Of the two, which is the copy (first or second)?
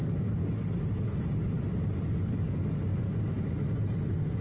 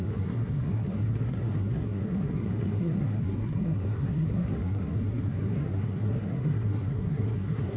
second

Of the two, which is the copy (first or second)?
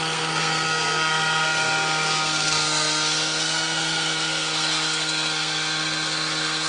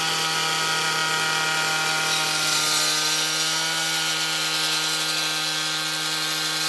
first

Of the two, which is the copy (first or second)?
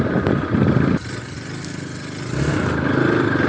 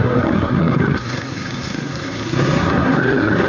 second